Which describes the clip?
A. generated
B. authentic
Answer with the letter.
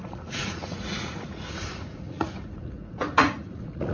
A